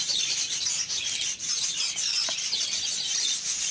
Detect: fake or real real